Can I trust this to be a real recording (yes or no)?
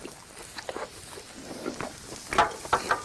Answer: yes